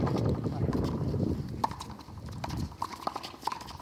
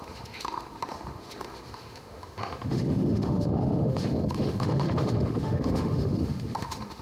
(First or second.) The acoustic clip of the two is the first